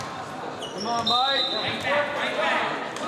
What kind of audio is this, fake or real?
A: real